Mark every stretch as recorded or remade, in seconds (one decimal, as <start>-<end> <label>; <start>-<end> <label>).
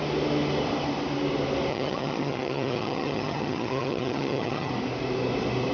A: 0.0-1.7 recorded; 1.7-4.7 remade; 4.7-5.7 recorded